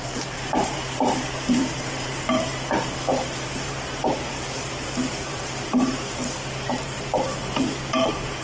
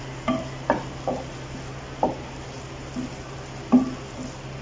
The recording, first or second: second